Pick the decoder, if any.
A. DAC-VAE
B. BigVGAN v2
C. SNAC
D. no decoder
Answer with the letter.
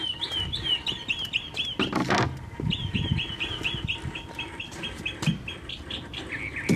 D